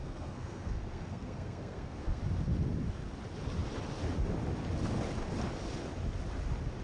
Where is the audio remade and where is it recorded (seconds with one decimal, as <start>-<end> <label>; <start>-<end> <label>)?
0.0-2.2 remade; 2.2-6.8 recorded